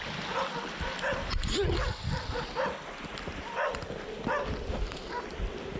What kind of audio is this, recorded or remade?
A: recorded